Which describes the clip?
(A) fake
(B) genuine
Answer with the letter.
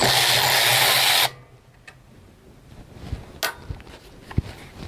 B